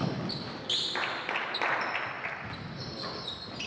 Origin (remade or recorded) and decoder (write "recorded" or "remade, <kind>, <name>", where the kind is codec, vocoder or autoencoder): recorded